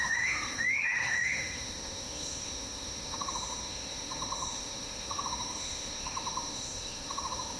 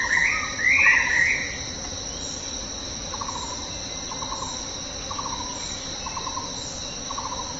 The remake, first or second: first